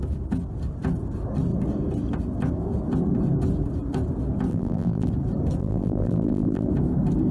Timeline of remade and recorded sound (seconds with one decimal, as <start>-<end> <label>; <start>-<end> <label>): 0.0-4.5 recorded; 4.5-5.1 remade; 5.1-5.6 recorded; 5.6-6.7 remade; 6.7-7.3 recorded